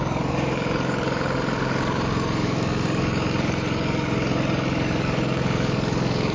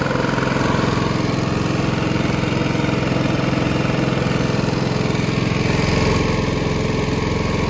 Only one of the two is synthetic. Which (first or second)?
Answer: first